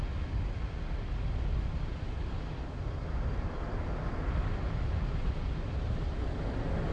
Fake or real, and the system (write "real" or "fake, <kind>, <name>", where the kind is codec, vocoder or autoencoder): real